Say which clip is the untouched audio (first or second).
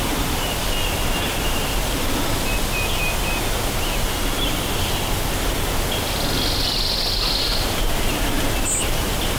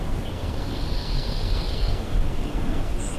first